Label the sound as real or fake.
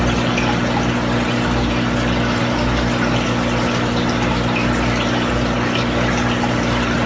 real